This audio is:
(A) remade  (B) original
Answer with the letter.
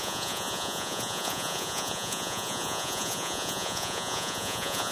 A